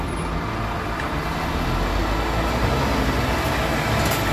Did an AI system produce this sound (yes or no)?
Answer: no